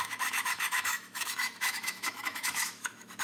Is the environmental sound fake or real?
fake